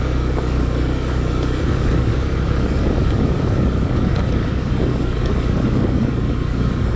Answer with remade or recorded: remade